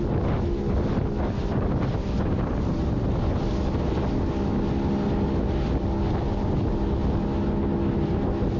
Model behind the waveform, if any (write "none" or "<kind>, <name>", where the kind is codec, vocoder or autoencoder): none